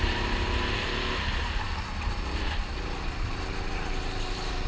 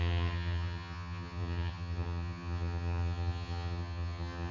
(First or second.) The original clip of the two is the first